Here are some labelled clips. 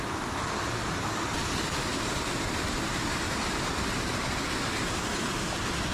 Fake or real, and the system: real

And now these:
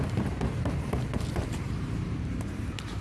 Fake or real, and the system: fake, vocoder, BigVGAN v2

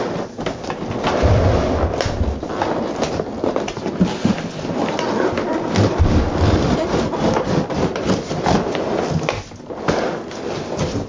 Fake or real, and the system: real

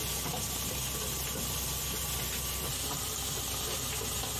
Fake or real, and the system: real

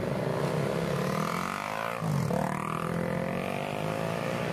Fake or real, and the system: real